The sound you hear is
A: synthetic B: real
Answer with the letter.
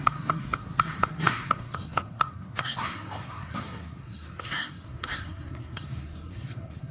A